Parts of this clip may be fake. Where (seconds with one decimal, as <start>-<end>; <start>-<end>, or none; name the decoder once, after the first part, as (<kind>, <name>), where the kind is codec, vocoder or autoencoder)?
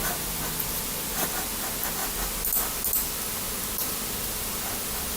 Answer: none